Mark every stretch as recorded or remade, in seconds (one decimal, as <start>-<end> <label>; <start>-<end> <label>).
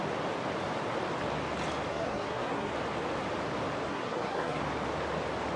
0.0-1.9 recorded; 1.9-2.7 remade; 2.7-3.9 recorded; 3.9-4.6 remade; 4.6-5.6 recorded